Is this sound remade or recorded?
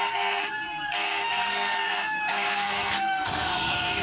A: remade